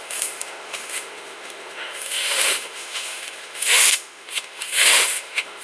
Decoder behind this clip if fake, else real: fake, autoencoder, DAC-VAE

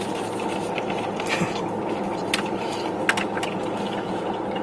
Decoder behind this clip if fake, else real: real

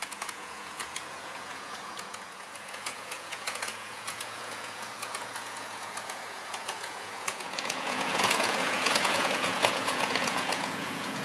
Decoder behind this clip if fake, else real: fake, vocoder, Vocos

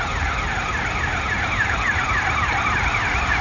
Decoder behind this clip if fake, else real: fake, vocoder, BigVGAN v2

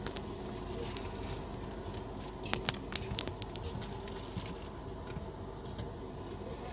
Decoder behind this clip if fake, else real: real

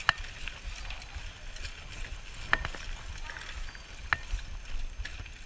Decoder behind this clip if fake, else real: real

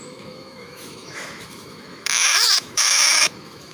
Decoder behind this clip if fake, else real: fake, autoencoder, DAC-VAE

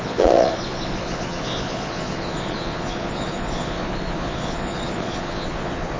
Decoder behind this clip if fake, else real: fake, vocoder, Vocos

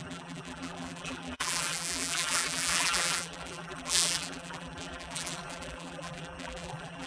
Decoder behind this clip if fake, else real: fake, vocoder, BigVGAN v2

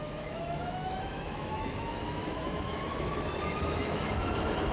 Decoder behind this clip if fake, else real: fake, autoencoder, DAC-VAE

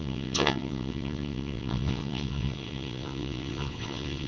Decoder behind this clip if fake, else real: fake, vocoder, WaveNeXt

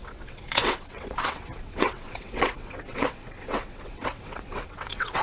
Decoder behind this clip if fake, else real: fake, vocoder, WaveNeXt